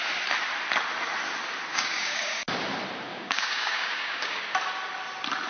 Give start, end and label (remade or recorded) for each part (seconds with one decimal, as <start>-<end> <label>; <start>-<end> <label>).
0.0-1.7 recorded; 1.7-2.4 remade; 2.4-3.1 recorded; 3.1-4.4 remade; 4.4-5.5 recorded

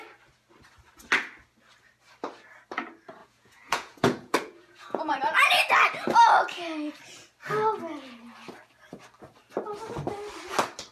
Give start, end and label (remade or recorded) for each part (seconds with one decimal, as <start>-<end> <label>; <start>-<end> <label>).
0.0-3.2 recorded; 3.2-5.2 remade; 5.2-10.9 recorded